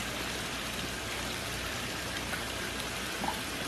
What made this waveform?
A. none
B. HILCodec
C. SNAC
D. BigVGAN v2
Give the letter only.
D